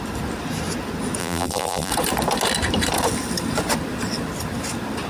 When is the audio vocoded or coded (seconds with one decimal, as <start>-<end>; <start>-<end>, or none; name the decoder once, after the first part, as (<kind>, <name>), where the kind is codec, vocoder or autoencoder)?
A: 1.2-1.9 (vocoder, BigVGAN v2)